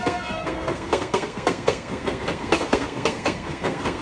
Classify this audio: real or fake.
fake